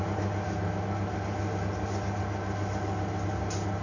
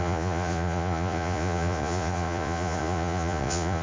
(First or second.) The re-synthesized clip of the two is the second